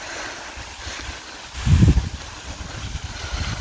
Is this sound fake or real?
real